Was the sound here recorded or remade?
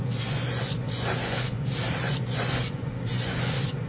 remade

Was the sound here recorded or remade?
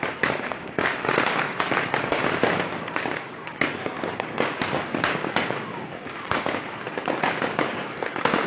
remade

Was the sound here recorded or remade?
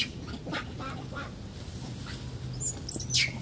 recorded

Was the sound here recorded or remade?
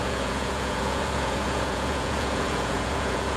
remade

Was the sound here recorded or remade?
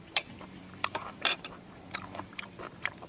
remade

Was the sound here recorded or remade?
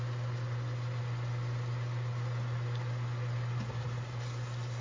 recorded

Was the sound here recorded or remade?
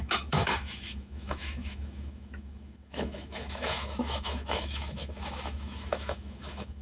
remade